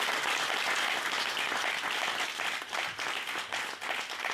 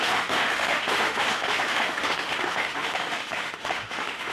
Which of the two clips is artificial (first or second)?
second